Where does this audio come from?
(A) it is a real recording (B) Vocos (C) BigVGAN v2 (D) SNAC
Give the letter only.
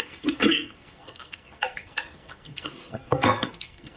D